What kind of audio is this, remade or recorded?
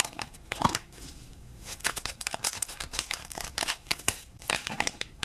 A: remade